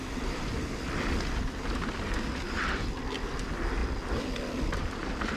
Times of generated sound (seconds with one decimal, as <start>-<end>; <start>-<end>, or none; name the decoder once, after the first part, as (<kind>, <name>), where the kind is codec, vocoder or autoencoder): none

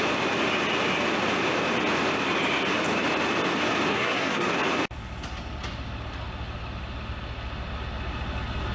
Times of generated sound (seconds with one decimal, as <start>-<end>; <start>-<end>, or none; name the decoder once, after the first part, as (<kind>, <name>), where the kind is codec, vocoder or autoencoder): 3.9-4.5 (codec, SNAC)

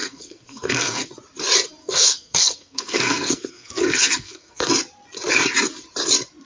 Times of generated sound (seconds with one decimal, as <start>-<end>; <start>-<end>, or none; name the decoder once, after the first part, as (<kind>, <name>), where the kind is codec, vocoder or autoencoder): 0.0-1.1 (codec, SNAC); 1.8-4.7